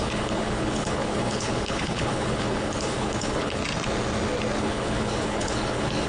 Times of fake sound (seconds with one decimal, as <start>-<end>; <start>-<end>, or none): 0.0-3.6; 4.6-6.1

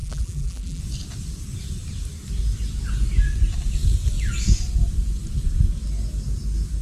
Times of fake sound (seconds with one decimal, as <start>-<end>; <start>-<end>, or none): 0.0-0.8

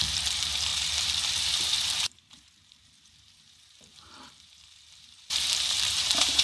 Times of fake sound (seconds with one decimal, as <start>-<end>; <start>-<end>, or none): 0.0-6.4

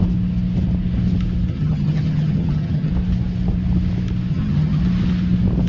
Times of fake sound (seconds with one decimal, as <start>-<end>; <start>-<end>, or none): 1.5-2.9; 4.3-4.8

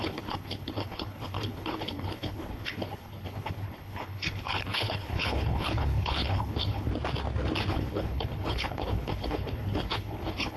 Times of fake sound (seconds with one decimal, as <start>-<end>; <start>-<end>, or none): 0.0-6.9; 7.7-10.6